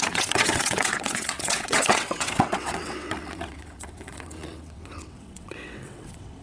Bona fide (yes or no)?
no